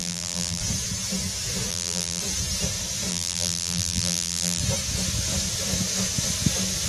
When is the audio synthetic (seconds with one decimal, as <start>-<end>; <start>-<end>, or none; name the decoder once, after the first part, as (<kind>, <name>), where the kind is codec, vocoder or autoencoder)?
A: 0.0-0.6 (vocoder, BigVGAN v2); 1.7-2.2; 3.1-4.6